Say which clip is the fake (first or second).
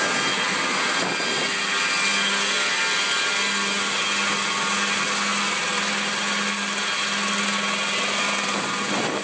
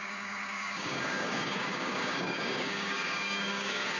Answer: second